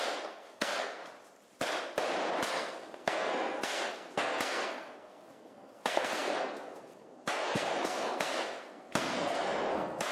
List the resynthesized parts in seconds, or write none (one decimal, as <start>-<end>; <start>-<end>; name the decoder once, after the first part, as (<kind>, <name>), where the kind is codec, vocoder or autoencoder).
0.0-1.0 (codec, SNAC); 2.5-10.1